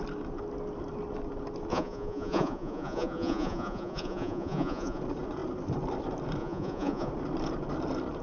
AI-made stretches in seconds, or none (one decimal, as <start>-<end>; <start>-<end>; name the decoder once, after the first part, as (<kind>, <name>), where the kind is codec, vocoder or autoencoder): 1.7-5.0 (vocoder, Vocos); 6.4-7.1